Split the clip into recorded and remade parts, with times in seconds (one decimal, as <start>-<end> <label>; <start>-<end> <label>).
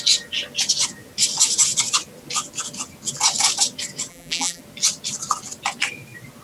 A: 0.0-4.1 recorded; 4.1-4.6 remade; 4.6-6.4 recorded